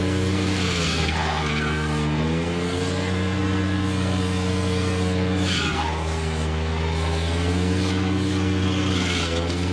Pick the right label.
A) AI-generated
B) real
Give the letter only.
A